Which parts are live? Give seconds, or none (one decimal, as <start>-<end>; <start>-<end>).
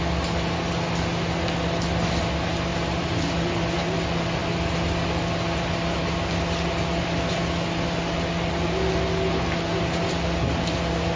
0.0-2.7; 3.3-11.2